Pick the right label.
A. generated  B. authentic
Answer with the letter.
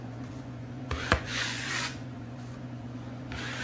A